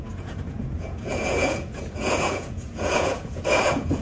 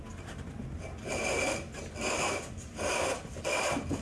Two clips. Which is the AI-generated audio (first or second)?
first